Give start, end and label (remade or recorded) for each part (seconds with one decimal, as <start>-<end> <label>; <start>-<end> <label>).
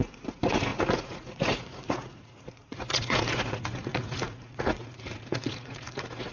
0.0-6.3 remade